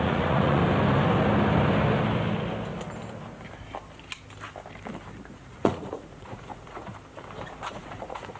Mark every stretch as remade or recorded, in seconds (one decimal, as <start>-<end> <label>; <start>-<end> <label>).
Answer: 0.0-0.6 remade; 0.6-5.3 recorded; 5.3-6.9 remade; 6.9-7.7 recorded; 7.7-8.4 remade